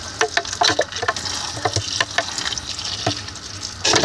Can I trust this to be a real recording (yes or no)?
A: yes